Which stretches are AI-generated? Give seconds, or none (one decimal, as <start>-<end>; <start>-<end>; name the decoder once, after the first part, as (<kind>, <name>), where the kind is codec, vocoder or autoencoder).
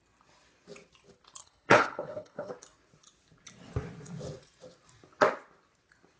1.4-2.5 (codec, HILCodec)